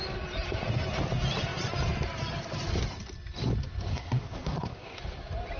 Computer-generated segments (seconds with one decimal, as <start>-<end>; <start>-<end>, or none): 3.9-5.0